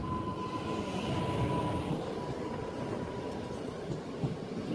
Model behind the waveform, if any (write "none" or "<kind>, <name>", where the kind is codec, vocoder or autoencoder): none